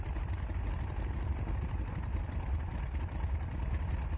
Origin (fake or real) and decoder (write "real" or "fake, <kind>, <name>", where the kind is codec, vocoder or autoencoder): real